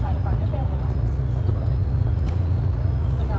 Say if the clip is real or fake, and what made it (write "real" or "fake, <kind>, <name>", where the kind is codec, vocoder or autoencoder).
fake, vocoder, Vocos